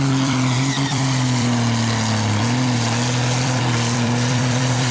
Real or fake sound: fake